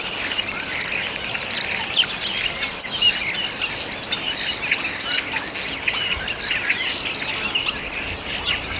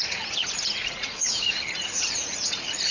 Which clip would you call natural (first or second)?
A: first